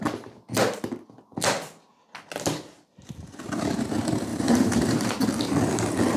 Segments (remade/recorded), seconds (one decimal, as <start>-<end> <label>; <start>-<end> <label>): 0.0-4.3 recorded; 4.3-5.1 remade; 5.1-6.2 recorded